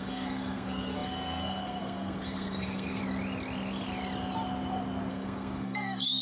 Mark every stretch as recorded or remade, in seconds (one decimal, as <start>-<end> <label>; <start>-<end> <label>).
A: 0.0-3.0 remade; 3.0-5.1 recorded; 5.1-6.2 remade